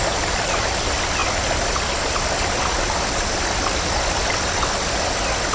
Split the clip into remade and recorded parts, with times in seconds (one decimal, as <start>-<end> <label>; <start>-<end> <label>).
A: 0.0-5.5 recorded